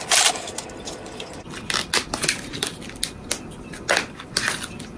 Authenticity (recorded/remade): recorded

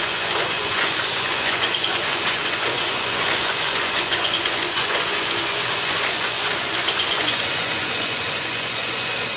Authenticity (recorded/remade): remade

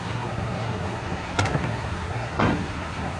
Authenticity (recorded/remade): remade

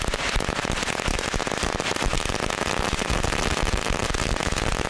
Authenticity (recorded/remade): recorded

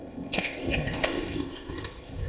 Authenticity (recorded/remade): remade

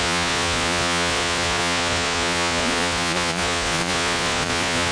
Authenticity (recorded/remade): remade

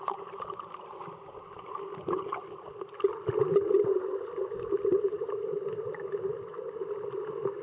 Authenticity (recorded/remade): recorded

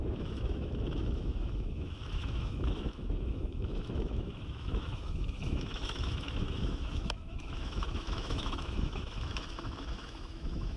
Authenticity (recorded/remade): remade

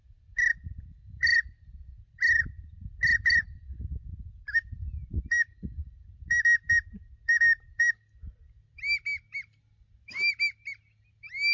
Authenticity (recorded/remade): recorded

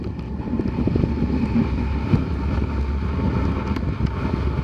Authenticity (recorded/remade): recorded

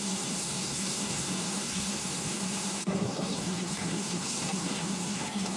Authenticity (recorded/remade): remade